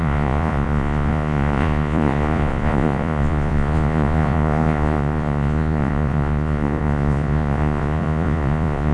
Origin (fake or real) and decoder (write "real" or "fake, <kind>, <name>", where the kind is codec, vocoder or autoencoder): fake, vocoder, Vocos